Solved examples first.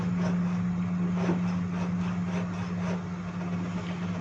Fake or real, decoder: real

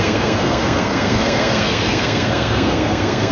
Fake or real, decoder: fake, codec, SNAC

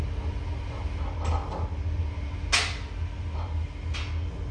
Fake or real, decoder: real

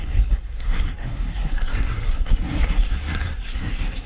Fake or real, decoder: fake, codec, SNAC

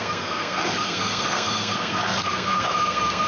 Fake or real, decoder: fake, codec, SNAC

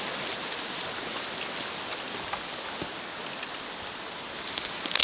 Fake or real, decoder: real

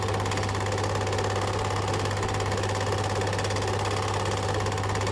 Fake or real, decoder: real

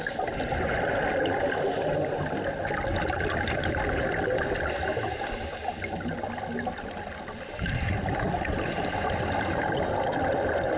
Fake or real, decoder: real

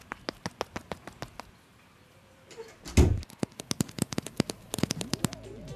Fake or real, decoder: real